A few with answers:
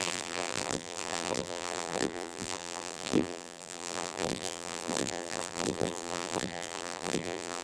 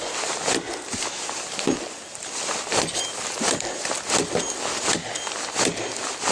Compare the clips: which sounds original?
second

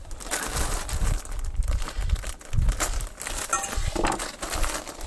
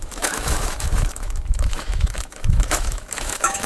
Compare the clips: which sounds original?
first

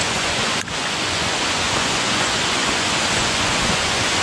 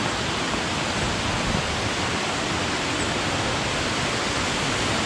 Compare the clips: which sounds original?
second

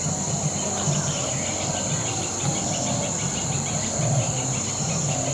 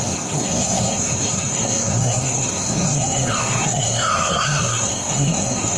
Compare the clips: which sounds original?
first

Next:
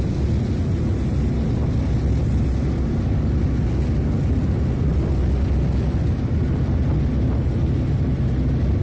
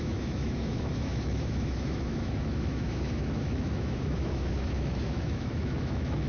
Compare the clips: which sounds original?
first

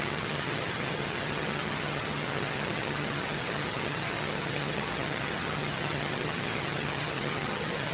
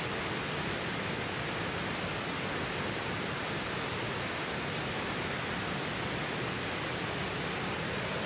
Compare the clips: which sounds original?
second